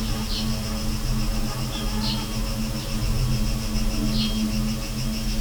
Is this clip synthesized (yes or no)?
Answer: no